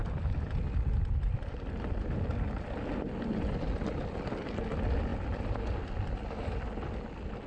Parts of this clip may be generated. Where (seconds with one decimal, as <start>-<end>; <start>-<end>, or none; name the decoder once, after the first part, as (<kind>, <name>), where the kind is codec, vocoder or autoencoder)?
none